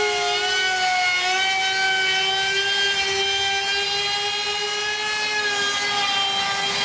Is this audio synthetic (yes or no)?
no